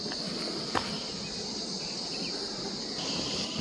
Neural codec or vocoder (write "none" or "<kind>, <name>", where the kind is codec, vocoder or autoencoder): none